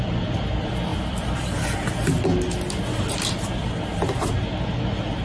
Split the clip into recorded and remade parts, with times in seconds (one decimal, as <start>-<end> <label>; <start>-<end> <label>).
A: 0.0-0.9 recorded; 0.9-1.9 remade; 1.9-5.2 recorded